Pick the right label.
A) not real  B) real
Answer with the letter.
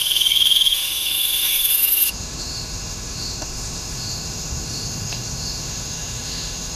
A